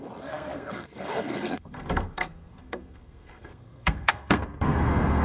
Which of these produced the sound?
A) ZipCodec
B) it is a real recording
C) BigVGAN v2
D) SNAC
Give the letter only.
D